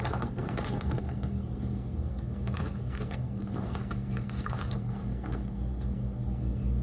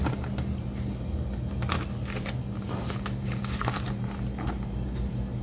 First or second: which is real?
second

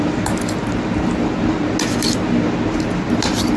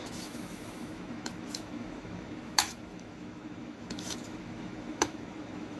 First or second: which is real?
first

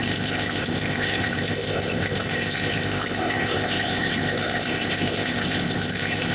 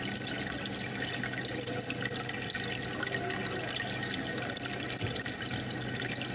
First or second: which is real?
second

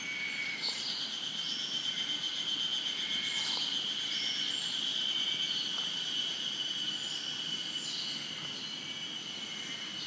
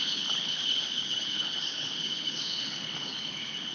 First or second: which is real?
first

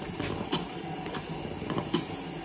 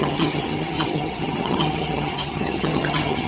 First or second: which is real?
first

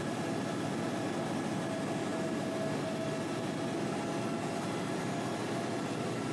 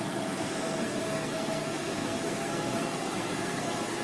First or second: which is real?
first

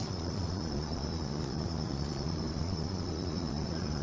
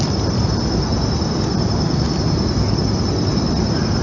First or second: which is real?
second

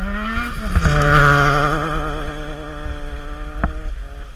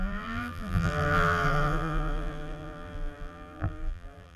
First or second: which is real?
first